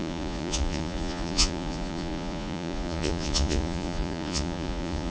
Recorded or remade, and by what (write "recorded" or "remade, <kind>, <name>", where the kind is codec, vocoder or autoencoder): remade, vocoder, Vocos